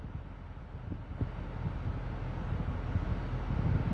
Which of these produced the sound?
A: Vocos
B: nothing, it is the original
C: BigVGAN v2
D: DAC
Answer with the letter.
B